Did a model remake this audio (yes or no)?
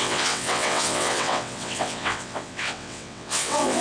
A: yes